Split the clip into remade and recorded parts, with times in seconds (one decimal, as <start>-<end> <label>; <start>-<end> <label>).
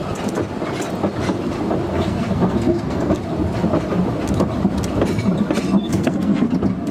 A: 0.0-1.9 recorded; 1.9-3.2 remade; 3.2-5.8 recorded; 5.8-6.5 remade; 6.5-6.9 recorded